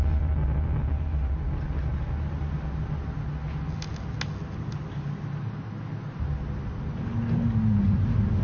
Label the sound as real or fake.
real